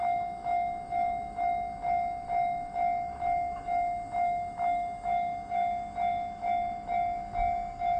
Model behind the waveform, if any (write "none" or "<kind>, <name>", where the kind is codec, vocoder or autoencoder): autoencoder, DAC-VAE